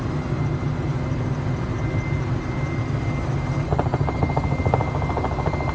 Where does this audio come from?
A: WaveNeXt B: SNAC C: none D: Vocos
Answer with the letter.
C